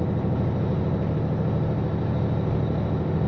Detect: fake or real real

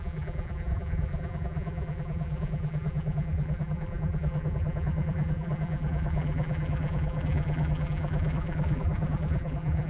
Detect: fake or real fake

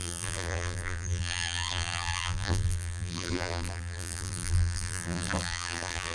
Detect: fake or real fake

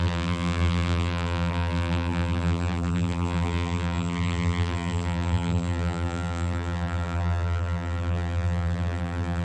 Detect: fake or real fake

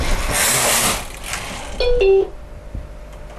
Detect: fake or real real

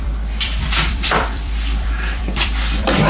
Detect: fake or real fake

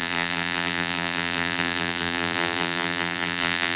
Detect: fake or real fake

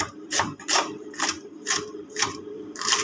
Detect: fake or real fake